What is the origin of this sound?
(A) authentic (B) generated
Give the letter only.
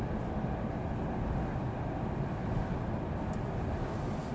A